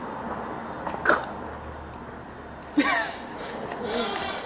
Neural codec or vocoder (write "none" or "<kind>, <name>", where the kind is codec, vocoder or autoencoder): none